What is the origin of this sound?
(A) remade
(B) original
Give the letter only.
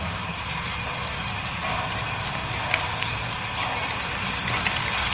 B